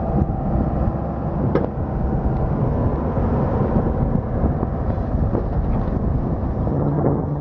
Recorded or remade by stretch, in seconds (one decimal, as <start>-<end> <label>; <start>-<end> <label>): 0.0-6.7 recorded; 6.7-7.4 remade

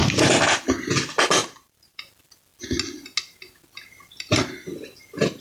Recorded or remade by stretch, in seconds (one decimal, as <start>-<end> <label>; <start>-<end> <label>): 0.0-0.6 remade; 0.6-1.4 recorded; 1.4-2.0 remade; 2.0-5.4 recorded

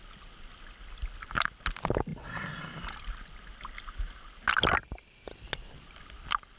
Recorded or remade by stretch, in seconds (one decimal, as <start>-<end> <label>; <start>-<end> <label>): 0.0-6.6 recorded

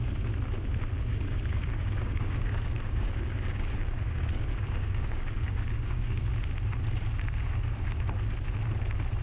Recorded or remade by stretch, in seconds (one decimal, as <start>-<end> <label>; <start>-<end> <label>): 0.0-1.1 recorded; 1.1-6.2 remade; 6.2-9.2 recorded

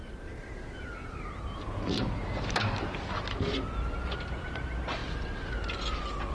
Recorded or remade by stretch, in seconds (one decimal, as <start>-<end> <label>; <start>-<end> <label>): 0.0-6.3 recorded